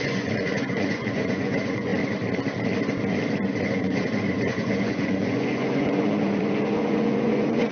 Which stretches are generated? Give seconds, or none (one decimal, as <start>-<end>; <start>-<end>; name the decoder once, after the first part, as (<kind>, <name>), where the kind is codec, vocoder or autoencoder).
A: 0.0-1.9 (vocoder, Vocos); 3.6-7.7